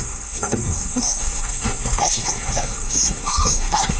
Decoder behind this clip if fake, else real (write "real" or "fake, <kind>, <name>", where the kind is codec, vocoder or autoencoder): fake, codec, SNAC